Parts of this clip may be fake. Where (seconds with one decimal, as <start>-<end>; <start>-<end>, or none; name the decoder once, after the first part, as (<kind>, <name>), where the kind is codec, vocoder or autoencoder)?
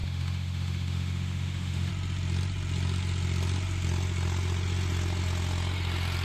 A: 0.0-1.9 (autoencoder, DAC-VAE)